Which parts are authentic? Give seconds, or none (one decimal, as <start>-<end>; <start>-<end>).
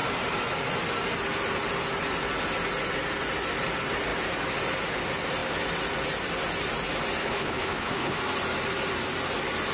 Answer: 0.0-7.2; 8.2-9.7